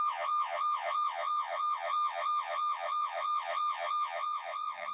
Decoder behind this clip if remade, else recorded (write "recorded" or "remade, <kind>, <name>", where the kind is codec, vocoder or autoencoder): remade, vocoder, WaveNeXt